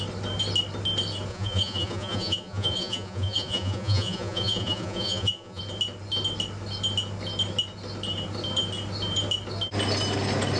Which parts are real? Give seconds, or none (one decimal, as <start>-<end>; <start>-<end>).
0.0-1.3; 5.6-10.6